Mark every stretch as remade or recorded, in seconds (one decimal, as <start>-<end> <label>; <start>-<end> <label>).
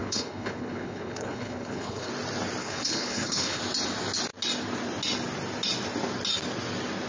0.0-2.1 remade; 2.1-2.6 recorded; 2.6-3.6 remade; 3.6-7.1 recorded